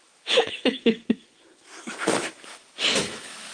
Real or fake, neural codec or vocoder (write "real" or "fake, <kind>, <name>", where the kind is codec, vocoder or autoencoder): fake, autoencoder, DAC-VAE